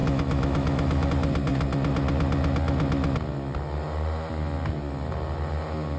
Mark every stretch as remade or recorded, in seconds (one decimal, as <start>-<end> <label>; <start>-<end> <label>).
0.0-1.1 remade; 1.1-6.0 recorded